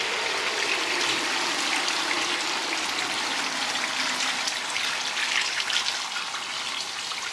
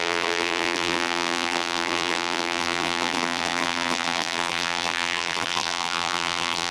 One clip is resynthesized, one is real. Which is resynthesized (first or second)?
second